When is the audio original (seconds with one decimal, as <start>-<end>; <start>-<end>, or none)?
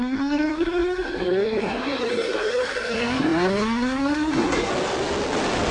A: 4.7-5.7